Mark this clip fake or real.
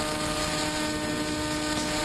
real